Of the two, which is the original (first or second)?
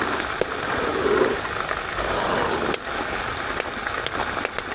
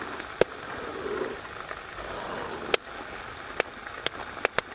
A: second